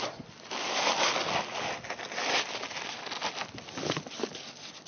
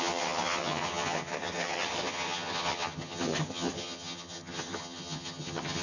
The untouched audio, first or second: first